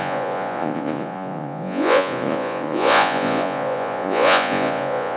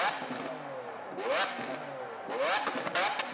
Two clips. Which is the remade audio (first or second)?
first